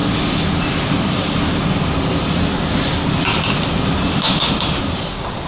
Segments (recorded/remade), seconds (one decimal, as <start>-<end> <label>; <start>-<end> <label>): 0.0-4.1 recorded; 4.1-4.8 remade; 4.8-5.5 recorded